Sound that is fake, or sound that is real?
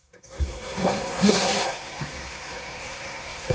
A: fake